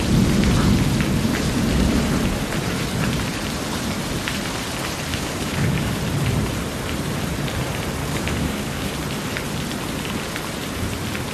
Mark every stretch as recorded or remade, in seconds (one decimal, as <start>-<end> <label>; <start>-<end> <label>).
0.0-5.1 recorded; 5.1-6.0 remade; 6.0-8.0 recorded; 8.0-8.9 remade; 8.9-11.3 recorded